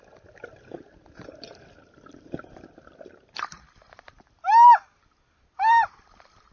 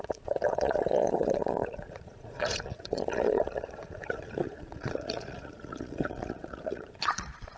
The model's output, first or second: second